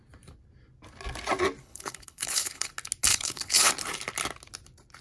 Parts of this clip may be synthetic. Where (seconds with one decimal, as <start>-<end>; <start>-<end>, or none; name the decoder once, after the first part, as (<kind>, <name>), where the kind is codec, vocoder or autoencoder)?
1.6-2.7 (codec, HILCodec); 3.1-3.7